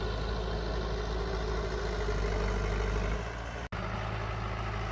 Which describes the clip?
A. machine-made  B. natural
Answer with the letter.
B